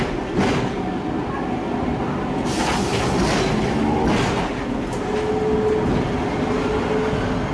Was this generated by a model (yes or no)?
no